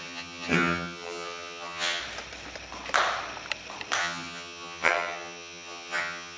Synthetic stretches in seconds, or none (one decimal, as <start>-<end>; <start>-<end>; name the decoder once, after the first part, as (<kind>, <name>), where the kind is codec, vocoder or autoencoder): 0.0-2.0 (vocoder, HiFi-GAN); 4.0-6.4